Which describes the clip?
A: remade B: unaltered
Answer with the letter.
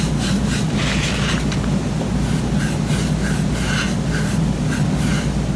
B